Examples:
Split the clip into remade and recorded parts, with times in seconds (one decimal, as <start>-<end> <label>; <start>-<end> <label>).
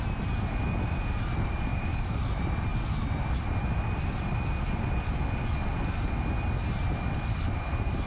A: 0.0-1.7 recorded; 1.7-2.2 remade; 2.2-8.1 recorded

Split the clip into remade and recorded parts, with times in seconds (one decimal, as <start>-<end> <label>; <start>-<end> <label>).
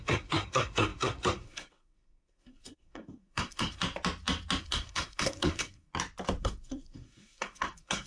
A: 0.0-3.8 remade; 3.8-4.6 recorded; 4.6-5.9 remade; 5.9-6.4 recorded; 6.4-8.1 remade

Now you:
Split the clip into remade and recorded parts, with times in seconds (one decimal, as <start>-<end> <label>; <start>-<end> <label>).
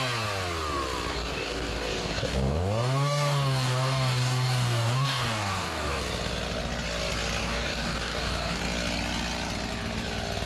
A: 0.0-1.1 recorded; 1.1-6.0 remade; 6.0-7.4 recorded; 7.4-8.6 remade; 8.6-10.5 recorded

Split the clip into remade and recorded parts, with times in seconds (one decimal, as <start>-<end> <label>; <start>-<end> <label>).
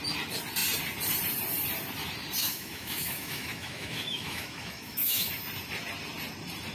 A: 0.0-2.4 recorded; 2.4-5.3 remade; 5.3-6.7 recorded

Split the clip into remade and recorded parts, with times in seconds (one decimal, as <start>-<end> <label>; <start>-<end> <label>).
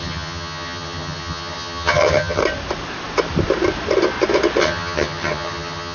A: 0.0-2.4 remade; 2.4-4.6 recorded; 4.6-5.9 remade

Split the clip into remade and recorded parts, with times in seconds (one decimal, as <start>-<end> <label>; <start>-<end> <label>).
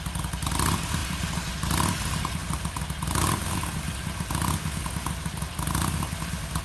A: 0.0-6.6 recorded